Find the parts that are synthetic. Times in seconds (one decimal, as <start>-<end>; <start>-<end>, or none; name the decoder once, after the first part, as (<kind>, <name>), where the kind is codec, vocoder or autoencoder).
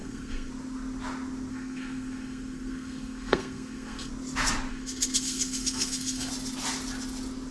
0.0-0.5 (codec, SNAC); 1.5-4.1; 4.7-6.3